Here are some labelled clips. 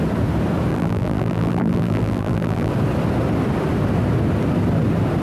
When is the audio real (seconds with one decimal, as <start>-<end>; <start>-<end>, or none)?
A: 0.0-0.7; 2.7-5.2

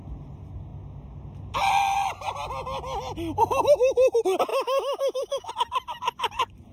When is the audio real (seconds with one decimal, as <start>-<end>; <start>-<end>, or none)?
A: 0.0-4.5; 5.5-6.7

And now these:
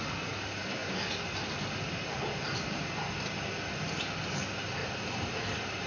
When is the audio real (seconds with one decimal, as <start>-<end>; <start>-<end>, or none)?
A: 0.0-0.8; 2.6-4.8

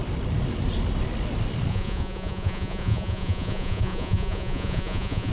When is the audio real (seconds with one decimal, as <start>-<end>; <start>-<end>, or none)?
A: 0.0-1.7

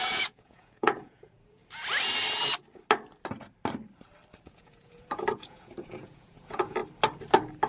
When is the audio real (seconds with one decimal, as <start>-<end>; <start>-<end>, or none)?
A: 1.6-4.4; 6.8-7.7